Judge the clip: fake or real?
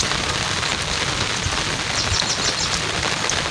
real